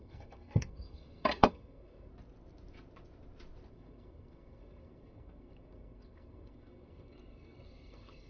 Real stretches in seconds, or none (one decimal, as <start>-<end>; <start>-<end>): 2.1-3.7